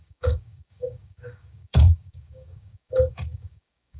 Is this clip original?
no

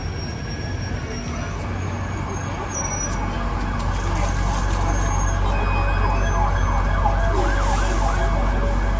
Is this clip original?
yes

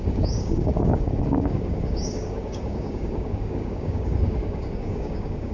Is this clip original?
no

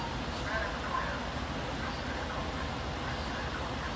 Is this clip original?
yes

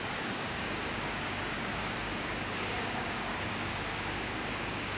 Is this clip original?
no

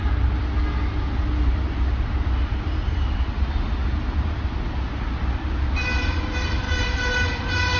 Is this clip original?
yes